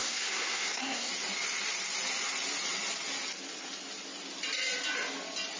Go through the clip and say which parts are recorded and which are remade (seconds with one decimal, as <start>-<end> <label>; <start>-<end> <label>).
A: 0.0-1.1 remade; 1.1-5.6 recorded